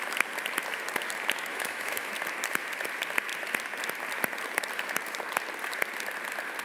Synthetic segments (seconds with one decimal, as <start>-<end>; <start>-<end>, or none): 1.5-2.1